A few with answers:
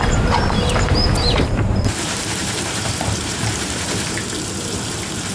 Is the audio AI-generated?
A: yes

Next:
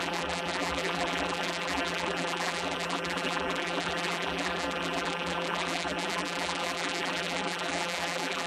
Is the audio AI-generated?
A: yes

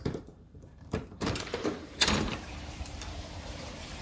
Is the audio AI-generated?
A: yes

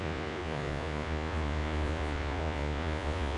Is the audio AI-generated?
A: yes